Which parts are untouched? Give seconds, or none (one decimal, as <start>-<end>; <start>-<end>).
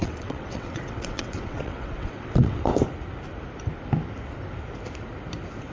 2.7-5.7